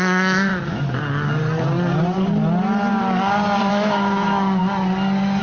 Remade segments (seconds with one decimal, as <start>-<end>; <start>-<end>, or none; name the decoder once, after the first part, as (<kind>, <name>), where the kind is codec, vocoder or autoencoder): 0.0-0.5 (autoencoder, DAC-VAE); 3.7-4.6